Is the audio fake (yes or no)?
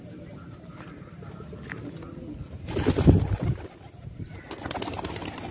no